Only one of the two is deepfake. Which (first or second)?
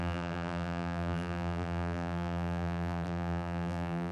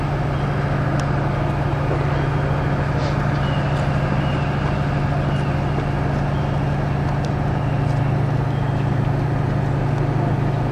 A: first